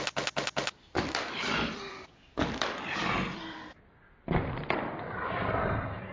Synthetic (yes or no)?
no